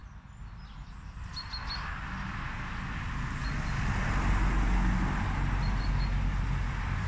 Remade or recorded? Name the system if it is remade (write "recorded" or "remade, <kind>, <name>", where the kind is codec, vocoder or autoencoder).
recorded